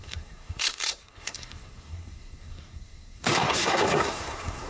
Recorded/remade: remade